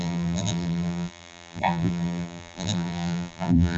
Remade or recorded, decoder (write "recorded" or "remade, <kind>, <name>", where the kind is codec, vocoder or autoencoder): remade, vocoder, BigVGAN v2